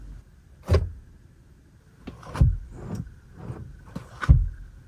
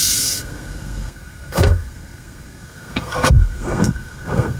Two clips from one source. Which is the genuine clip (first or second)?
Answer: first